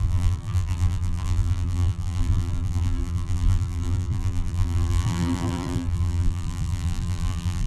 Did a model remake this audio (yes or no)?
yes